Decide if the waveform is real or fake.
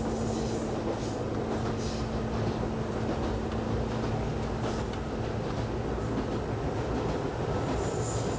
real